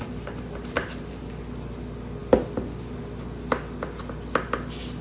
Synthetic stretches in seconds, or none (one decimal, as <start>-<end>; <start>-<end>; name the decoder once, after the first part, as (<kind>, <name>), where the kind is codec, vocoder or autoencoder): none